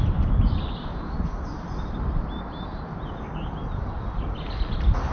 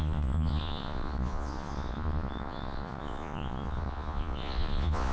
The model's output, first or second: second